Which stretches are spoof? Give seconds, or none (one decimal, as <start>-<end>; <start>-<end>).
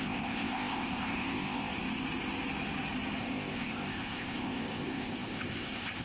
0.0-1.7; 3.2-6.0